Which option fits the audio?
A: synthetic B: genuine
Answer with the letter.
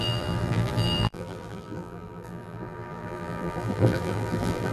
A